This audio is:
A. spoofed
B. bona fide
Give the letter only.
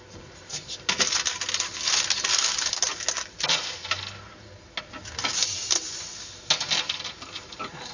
B